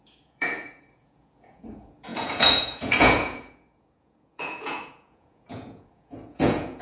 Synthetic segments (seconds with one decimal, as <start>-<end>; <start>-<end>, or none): 0.0-6.8